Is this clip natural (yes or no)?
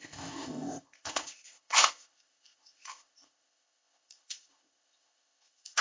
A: no